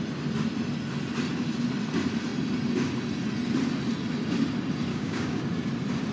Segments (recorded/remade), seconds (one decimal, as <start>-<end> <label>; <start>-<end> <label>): 0.0-4.9 recorded; 4.9-5.4 remade; 5.4-6.1 recorded